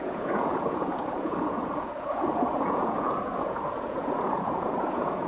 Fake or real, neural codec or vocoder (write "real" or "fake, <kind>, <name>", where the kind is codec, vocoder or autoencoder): fake, vocoder, Vocos